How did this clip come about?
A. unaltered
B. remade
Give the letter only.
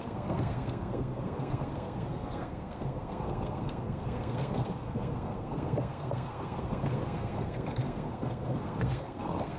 B